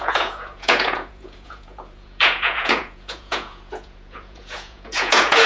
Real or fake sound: fake